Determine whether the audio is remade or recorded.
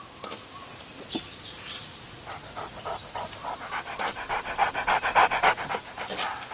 recorded